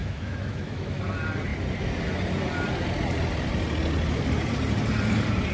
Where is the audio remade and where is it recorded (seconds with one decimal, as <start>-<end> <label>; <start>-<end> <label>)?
0.0-1.0 remade; 1.0-5.5 recorded